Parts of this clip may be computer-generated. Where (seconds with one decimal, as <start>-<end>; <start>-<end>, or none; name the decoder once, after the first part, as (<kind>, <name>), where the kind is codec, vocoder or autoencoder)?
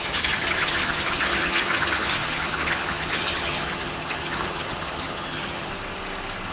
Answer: 0.0-5.7 (vocoder, HiFi-GAN)